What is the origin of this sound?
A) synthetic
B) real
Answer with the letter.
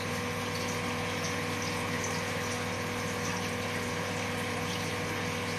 B